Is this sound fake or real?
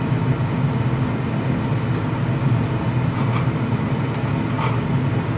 real